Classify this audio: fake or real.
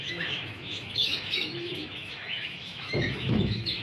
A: fake